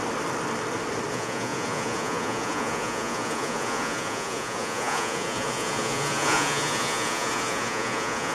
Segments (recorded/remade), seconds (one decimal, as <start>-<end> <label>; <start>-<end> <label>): 0.0-1.1 recorded; 1.1-8.3 remade